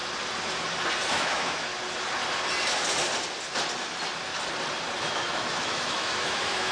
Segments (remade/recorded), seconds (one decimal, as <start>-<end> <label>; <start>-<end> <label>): 0.0-1.1 recorded; 1.1-1.7 remade; 1.7-5.0 recorded; 5.0-6.7 remade